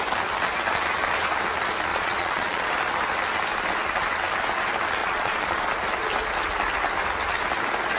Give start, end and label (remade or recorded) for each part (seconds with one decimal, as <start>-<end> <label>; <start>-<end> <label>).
0.0-1.9 recorded; 1.9-2.7 remade; 2.7-5.0 recorded; 5.0-5.6 remade; 5.6-8.0 recorded